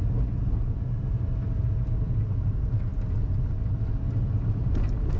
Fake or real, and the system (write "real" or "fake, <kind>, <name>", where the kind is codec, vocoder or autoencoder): real